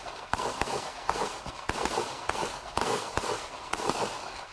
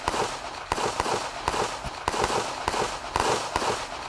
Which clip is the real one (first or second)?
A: second